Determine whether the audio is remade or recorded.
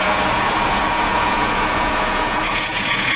remade